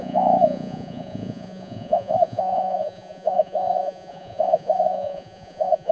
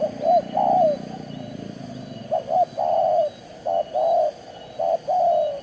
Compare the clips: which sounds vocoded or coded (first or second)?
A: first